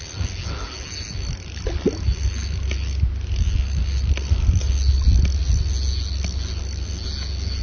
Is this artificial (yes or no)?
no